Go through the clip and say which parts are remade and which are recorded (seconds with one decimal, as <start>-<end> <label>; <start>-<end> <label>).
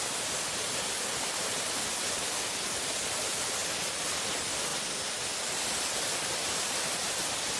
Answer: 0.0-7.6 recorded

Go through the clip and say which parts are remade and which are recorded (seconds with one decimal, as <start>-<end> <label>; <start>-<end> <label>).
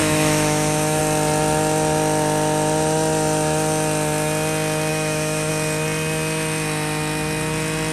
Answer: 0.0-1.0 remade; 1.0-4.9 recorded; 4.9-5.5 remade; 5.5-7.9 recorded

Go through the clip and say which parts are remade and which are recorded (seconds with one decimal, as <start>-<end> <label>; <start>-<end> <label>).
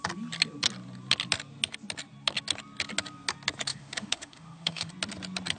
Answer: 0.0-3.7 recorded; 3.7-4.9 remade; 4.9-5.6 recorded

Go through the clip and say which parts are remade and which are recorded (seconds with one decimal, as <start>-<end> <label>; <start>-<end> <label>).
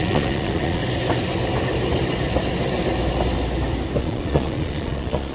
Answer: 0.0-0.8 remade; 0.8-4.0 recorded; 4.0-5.3 remade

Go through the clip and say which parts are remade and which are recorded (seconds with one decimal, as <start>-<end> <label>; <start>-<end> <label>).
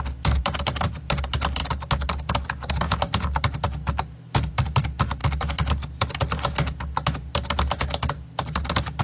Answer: 0.0-9.0 recorded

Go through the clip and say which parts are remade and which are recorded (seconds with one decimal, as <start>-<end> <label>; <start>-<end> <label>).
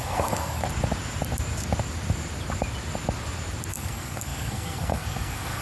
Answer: 0.0-0.6 remade; 0.6-3.7 recorded; 3.7-5.6 remade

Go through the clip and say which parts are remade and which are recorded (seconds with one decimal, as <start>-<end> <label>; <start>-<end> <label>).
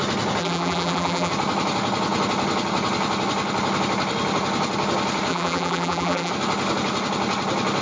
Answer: 0.0-0.4 recorded; 0.4-1.3 remade; 1.3-5.3 recorded; 5.3-6.3 remade; 6.3-7.8 recorded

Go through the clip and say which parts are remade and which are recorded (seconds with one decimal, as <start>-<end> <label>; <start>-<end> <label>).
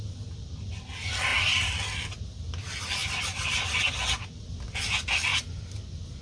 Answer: 0.0-6.2 recorded